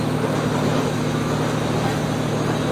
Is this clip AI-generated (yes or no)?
no